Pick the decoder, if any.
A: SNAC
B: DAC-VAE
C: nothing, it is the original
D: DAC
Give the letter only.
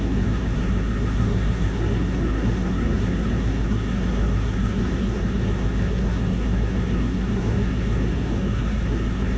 A